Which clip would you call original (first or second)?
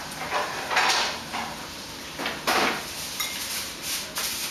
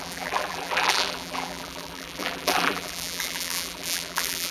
first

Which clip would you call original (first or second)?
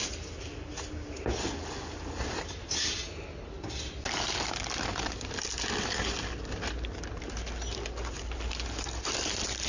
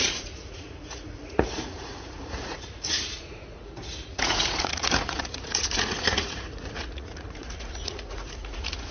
first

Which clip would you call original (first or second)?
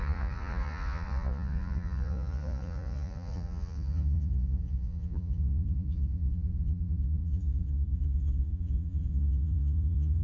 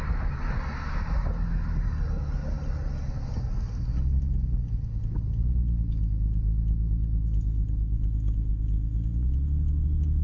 second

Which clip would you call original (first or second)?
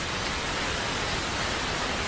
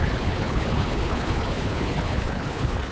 first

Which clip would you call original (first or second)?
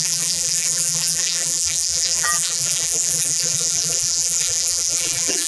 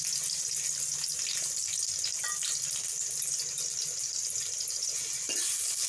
second